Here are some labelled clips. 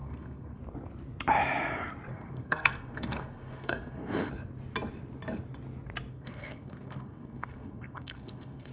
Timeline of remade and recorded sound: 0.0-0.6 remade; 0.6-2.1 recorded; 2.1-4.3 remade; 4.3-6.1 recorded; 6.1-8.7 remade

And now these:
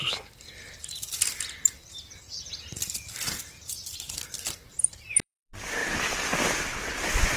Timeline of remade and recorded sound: 0.0-5.8 remade; 5.8-6.8 recorded; 6.8-7.4 remade

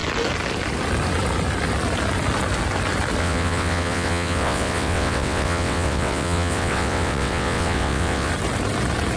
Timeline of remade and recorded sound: 0.0-3.2 recorded; 3.2-8.3 remade; 8.3-9.2 recorded